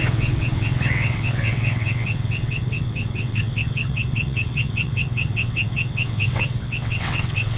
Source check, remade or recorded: remade